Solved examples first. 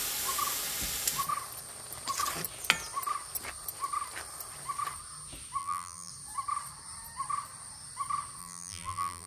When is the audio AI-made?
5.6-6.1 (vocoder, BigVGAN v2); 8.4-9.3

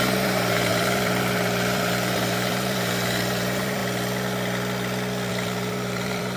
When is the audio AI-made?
0.0-3.8 (vocoder, BigVGAN v2); 5.3-6.4

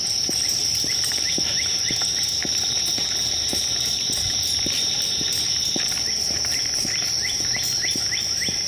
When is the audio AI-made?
0.0-1.8 (vocoder, BigVGAN v2); 3.5-5.6; 7.5-8.7

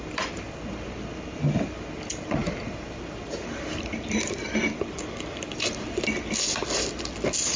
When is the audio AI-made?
none